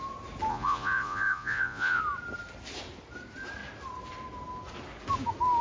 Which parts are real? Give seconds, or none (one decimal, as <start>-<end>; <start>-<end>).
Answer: 0.0-0.5; 2.0-5.6